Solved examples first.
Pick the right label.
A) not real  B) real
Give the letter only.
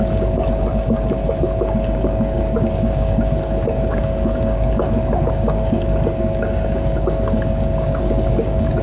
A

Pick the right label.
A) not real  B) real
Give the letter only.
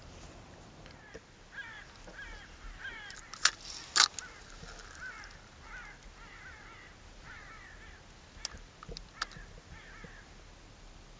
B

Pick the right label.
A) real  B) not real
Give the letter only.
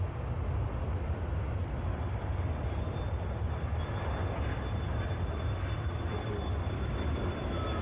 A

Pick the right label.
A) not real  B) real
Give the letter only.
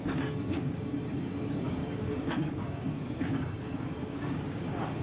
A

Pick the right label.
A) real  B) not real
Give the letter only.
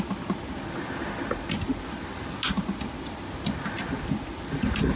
A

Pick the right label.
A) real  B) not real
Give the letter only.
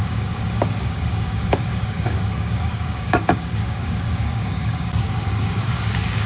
B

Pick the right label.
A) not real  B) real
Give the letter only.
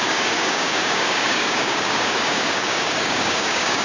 A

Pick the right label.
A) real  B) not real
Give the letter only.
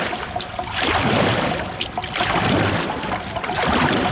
A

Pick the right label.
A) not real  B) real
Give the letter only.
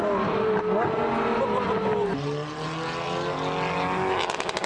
B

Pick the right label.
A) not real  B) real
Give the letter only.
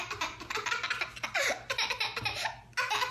B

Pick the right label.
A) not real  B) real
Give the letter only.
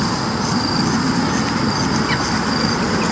B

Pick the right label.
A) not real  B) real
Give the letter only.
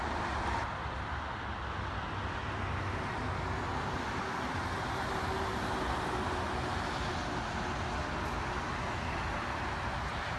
B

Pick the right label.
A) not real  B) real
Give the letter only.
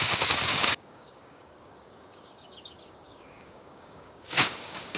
A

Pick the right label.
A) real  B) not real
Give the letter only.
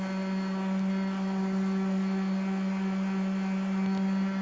A